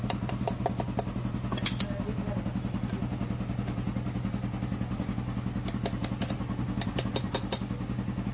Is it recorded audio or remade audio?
recorded